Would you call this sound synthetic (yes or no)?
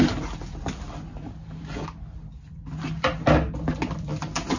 no